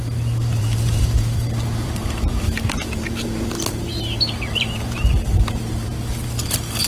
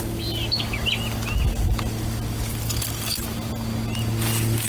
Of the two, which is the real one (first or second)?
second